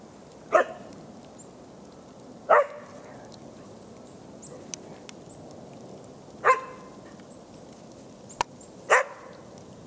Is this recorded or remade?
recorded